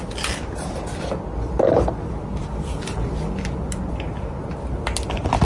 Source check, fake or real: real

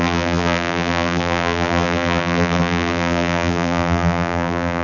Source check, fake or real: fake